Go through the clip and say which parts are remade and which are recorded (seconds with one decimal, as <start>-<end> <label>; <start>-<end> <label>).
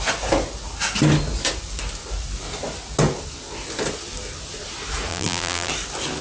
0.0-5.1 recorded; 5.1-5.7 remade; 5.7-6.2 recorded